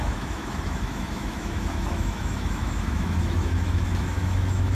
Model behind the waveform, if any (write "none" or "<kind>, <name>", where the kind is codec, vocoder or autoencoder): autoencoder, DAC-VAE